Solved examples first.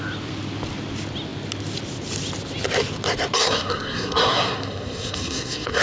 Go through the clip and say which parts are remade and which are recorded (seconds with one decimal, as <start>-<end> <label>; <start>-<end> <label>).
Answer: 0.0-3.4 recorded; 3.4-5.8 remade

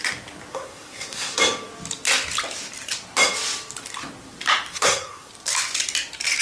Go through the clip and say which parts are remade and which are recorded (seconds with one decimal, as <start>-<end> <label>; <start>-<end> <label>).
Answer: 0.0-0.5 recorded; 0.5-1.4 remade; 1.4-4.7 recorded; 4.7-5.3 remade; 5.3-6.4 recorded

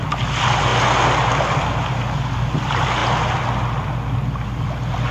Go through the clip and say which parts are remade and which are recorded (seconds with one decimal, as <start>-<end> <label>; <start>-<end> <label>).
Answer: 0.0-5.1 recorded

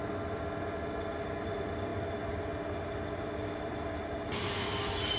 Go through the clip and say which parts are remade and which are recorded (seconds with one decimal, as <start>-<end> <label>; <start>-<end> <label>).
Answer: 0.0-5.2 recorded

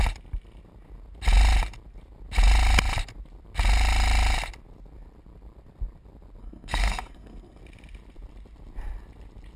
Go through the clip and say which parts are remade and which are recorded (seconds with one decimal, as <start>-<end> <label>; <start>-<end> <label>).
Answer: 0.0-6.4 recorded; 6.4-7.6 remade; 7.6-9.6 recorded

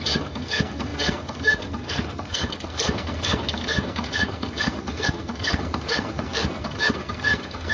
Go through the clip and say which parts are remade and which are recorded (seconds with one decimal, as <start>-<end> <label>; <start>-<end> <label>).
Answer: 0.0-7.7 remade

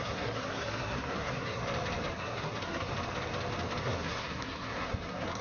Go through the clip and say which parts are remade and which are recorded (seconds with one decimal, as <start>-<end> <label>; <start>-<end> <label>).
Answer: 0.0-1.6 remade; 1.6-2.1 recorded; 2.1-2.9 remade; 2.9-3.8 recorded; 3.8-5.4 remade

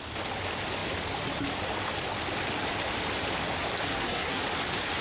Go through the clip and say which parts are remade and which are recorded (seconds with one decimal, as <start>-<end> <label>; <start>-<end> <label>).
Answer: 0.0-3.9 recorded; 3.9-4.4 remade; 4.4-5.0 recorded